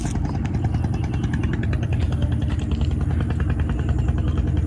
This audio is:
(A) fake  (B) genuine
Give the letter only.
B